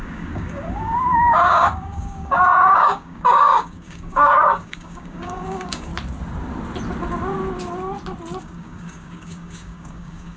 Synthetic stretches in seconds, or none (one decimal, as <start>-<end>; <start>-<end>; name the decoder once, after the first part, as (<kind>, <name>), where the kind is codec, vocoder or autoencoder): 0.0-5.9 (codec, DAC); 8.4-10.4